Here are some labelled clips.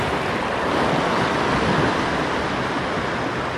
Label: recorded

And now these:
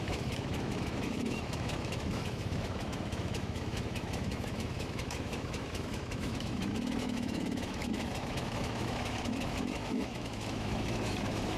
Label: remade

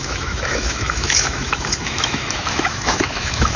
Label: remade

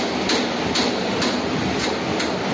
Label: recorded